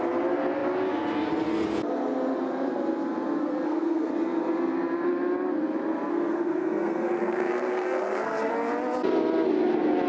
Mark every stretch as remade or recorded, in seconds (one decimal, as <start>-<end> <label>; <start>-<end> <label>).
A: 0.0-3.4 recorded; 3.4-4.1 remade; 4.1-6.1 recorded; 6.1-8.5 remade; 8.5-10.1 recorded